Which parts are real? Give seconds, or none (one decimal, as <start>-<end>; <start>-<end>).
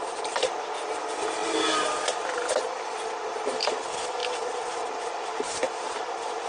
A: 0.0-6.5